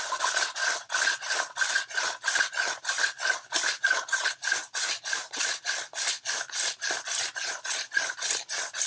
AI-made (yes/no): no